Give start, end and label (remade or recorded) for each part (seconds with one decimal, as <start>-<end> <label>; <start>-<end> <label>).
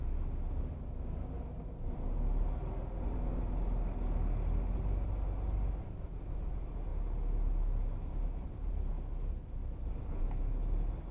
0.0-11.1 recorded